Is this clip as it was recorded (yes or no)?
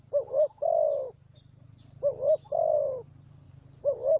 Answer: no